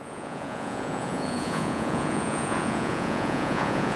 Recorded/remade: remade